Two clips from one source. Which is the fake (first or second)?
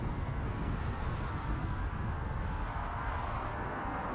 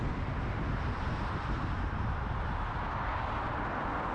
first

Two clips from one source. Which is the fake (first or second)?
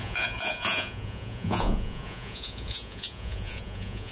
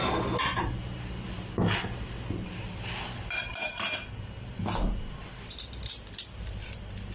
first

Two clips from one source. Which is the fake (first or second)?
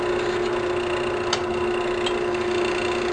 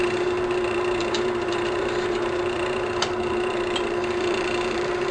second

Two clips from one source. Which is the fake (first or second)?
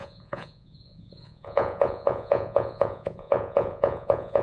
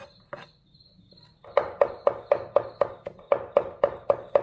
first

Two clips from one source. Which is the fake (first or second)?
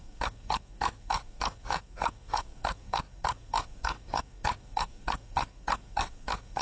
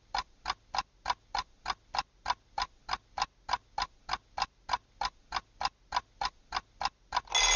first